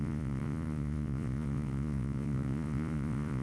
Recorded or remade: remade